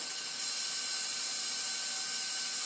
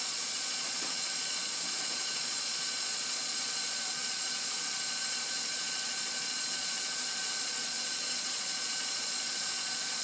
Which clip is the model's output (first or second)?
second